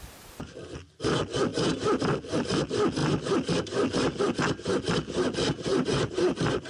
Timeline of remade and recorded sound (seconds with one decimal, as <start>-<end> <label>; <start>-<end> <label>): 0.0-5.7 recorded; 5.7-6.3 remade; 6.3-6.7 recorded